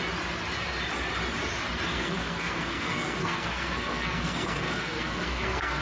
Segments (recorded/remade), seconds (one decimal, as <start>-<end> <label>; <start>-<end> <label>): 0.0-1.9 recorded; 1.9-5.8 remade